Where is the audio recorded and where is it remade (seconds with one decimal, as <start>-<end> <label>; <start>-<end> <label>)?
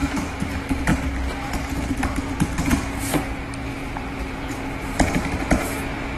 0.0-0.5 remade; 0.5-3.8 recorded; 3.8-5.4 remade; 5.4-6.2 recorded